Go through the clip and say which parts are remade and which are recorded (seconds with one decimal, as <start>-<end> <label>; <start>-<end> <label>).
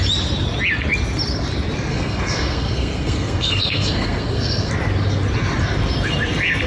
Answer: 0.0-1.9 recorded; 1.9-4.7 remade; 4.7-6.7 recorded